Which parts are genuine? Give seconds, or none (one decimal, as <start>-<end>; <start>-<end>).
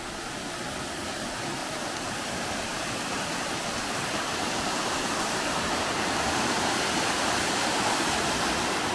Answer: 0.0-1.6; 2.3-2.7; 7.5-8.9